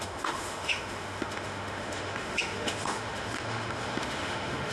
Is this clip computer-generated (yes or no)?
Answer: yes